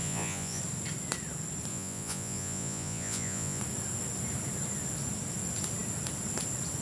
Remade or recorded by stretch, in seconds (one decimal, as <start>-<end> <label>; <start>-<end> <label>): 0.0-0.6 remade; 0.6-1.7 recorded; 1.7-3.6 remade; 3.6-6.8 recorded